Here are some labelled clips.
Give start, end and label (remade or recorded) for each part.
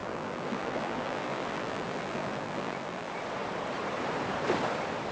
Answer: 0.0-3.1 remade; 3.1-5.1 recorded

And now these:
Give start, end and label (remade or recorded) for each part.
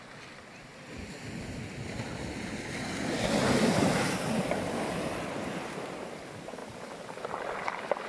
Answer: 0.0-8.1 recorded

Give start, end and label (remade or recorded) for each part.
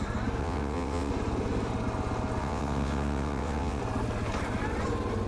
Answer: 0.0-0.4 recorded; 0.4-1.1 remade; 1.1-2.4 recorded; 2.4-3.8 remade; 3.8-5.3 recorded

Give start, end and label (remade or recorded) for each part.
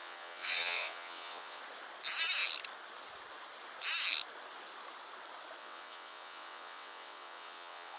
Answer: 0.0-1.6 remade; 1.6-5.6 recorded; 5.6-8.0 remade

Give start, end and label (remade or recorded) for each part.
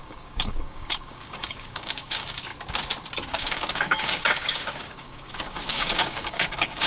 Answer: 0.0-2.5 remade; 2.5-3.3 recorded; 3.3-6.9 remade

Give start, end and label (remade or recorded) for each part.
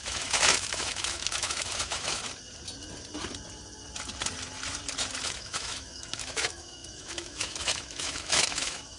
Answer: 0.0-2.2 remade; 2.2-5.2 recorded; 5.2-9.0 remade